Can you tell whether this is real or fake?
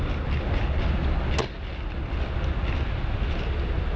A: real